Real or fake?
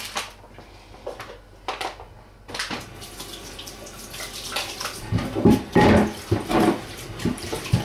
real